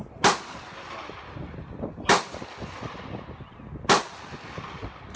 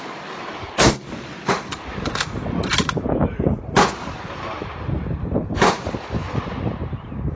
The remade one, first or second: second